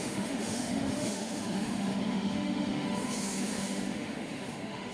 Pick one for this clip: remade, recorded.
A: remade